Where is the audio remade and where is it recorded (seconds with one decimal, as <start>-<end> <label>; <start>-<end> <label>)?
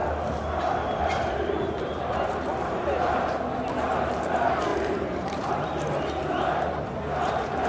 0.0-1.0 recorded; 1.0-7.7 remade